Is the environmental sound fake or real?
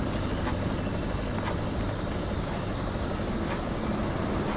real